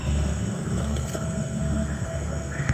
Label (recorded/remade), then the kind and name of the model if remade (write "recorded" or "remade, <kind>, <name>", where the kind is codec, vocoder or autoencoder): remade, codec, SNAC